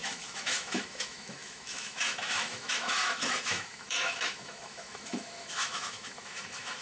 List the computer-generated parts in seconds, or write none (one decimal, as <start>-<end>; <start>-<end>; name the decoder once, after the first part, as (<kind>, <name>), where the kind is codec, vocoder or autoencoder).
0.0-6.8 (autoencoder, DAC-VAE)